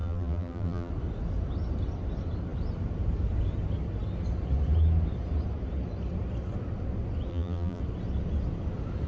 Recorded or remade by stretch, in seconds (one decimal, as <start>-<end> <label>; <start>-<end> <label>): 0.0-0.9 remade; 0.9-7.3 recorded; 7.3-7.8 remade; 7.8-9.1 recorded